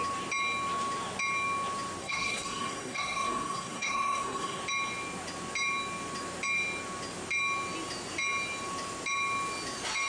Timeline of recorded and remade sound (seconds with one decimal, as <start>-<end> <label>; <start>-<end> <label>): 0.0-2.0 recorded; 2.0-4.6 remade; 4.6-10.1 recorded